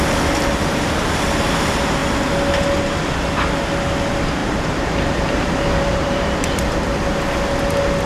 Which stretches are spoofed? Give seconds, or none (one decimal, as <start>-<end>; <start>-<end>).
4.4-6.3